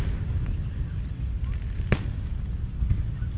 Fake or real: real